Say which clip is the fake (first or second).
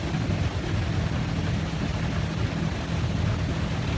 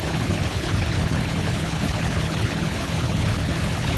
second